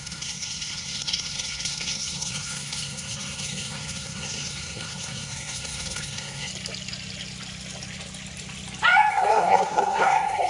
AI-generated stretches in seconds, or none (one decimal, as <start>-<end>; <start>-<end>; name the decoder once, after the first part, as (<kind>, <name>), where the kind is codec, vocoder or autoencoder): 0.0-6.5 (codec, SNAC); 9.1-10.5